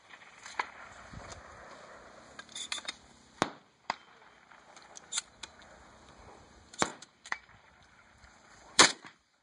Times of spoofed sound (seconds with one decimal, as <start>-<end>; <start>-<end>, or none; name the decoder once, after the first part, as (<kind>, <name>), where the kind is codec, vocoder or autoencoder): 0.0-1.3 (vocoder, BigVGAN v2); 6.1-9.4